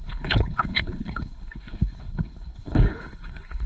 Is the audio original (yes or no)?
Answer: no